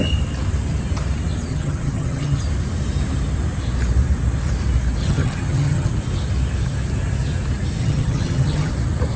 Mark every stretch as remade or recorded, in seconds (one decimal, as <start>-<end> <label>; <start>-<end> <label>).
0.0-1.5 recorded; 1.5-2.4 remade; 2.4-5.0 recorded; 5.0-5.9 remade; 5.9-7.8 recorded; 7.8-8.7 remade; 8.7-9.2 recorded